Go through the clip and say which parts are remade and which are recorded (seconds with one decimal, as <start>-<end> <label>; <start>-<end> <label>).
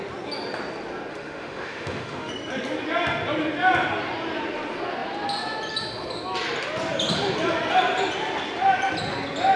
0.0-1.1 recorded; 1.1-2.3 remade; 2.3-9.6 recorded